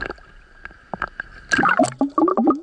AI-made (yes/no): no